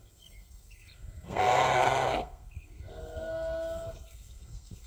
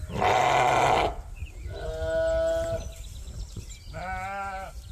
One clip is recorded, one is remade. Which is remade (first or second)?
first